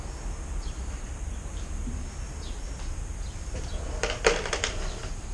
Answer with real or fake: real